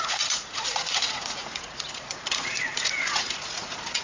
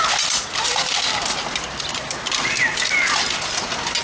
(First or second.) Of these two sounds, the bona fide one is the second